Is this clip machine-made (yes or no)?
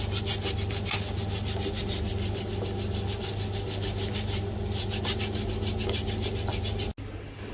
no